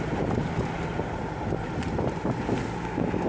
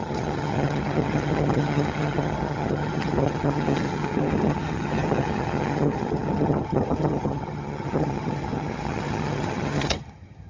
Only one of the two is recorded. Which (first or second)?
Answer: first